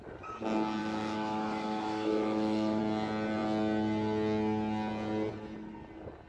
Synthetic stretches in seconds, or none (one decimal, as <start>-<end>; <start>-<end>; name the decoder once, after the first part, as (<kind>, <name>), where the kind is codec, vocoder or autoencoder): 0.8-2.8 (autoencoder, DAC-VAE)